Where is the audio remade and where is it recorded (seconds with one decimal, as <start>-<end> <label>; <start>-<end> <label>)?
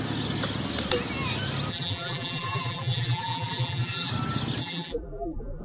0.0-1.7 recorded; 1.7-4.1 remade; 4.1-4.6 recorded; 4.6-5.6 remade